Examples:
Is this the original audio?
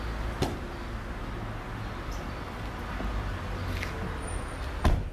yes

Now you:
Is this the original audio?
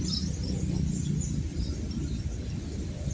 yes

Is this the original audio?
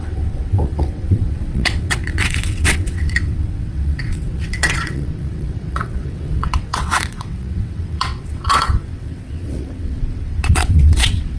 no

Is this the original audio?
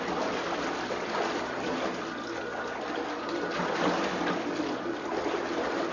yes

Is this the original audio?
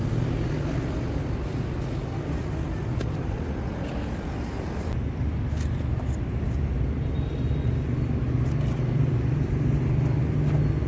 yes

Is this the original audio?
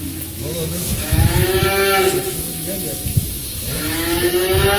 no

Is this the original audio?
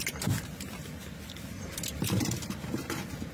yes